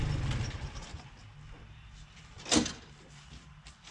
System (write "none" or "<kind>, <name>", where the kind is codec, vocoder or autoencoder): none